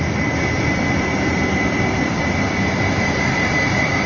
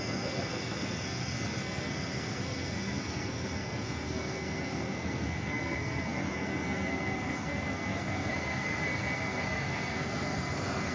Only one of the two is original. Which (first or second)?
first